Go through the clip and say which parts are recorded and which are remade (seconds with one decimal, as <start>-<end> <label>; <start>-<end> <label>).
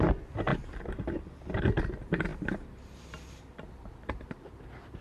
0.0-5.0 recorded